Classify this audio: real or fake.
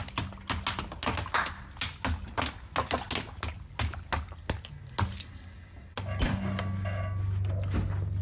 real